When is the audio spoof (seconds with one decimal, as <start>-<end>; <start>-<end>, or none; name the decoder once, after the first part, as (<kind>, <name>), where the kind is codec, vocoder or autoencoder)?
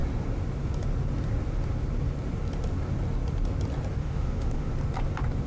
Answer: 4.0-4.7 (autoencoder, DAC-VAE)